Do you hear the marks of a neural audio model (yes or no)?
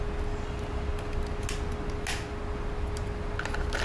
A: no